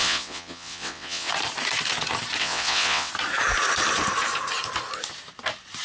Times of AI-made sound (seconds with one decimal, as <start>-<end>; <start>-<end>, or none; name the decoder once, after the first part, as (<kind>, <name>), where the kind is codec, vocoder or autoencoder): 0.0-1.3 (vocoder, WaveNeXt); 2.4-3.1